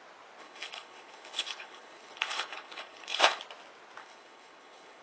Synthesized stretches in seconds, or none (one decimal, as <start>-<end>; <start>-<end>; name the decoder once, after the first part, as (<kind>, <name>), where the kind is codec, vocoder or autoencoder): 0.4-3.4 (codec, HILCodec); 4.0-5.0